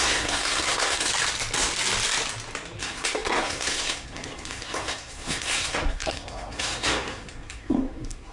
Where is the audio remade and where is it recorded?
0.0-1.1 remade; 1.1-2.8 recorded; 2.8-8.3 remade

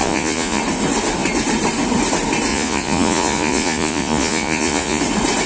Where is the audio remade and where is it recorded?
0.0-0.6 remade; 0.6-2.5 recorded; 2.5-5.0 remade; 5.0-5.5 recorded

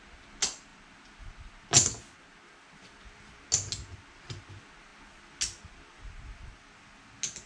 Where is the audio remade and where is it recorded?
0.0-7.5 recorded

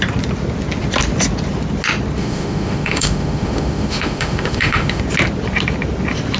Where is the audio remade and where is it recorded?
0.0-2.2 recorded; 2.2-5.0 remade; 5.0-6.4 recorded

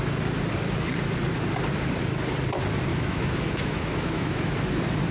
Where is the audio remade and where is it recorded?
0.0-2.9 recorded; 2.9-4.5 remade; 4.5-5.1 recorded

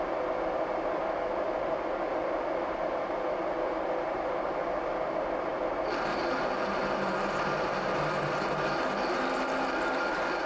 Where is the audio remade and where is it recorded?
0.0-10.5 recorded

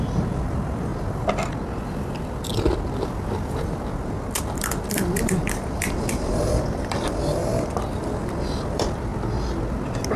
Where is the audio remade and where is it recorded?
0.0-0.9 remade; 0.9-4.4 recorded; 4.4-7.4 remade; 7.4-8.7 recorded; 8.7-9.1 remade; 9.1-10.2 recorded

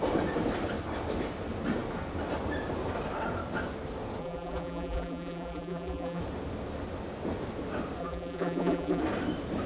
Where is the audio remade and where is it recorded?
0.0-4.2 recorded; 4.2-6.2 remade; 6.2-8.0 recorded; 8.0-9.0 remade; 9.0-9.7 recorded